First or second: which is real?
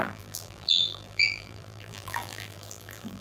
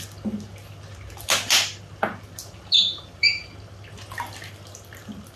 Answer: second